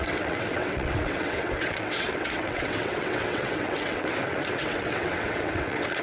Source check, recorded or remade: remade